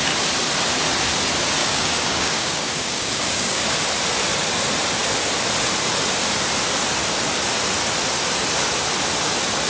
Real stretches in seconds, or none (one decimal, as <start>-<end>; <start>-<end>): 0.0-1.6; 3.6-9.7